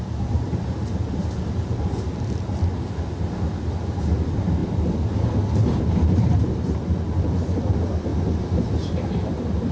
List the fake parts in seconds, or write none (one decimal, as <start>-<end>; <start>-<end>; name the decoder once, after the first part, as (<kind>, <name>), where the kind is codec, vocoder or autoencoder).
none